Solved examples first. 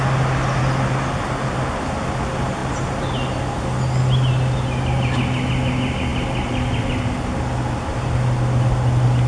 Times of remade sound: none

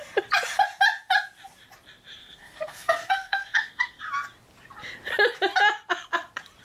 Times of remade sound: 2.2-4.0 (codec, SNAC)

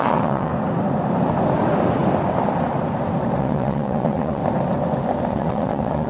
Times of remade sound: 0.0-0.5 (vocoder, WaveNeXt); 3.4-4.4; 5.3-6.1

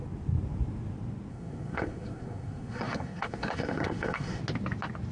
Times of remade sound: 1.3-4.4 (codec, SNAC)

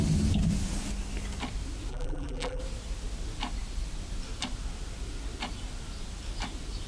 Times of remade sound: 1.9-2.6 (vocoder, BigVGAN v2)